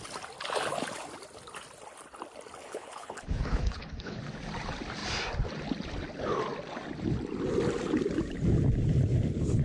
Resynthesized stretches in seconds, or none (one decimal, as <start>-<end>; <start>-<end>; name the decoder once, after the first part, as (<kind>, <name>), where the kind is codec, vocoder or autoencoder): 2.6-4.2 (codec, HILCodec)